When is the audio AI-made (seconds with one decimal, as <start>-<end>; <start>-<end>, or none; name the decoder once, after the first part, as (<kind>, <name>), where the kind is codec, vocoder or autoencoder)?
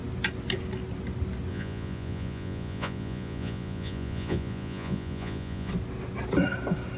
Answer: 1.5-5.7 (vocoder, Vocos)